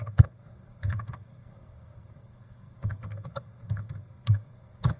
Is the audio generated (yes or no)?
yes